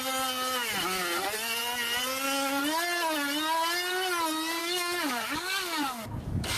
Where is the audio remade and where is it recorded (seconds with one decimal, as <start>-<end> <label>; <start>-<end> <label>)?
0.0-4.6 recorded; 4.6-6.6 remade